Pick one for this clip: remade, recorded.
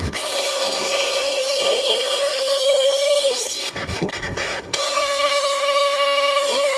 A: remade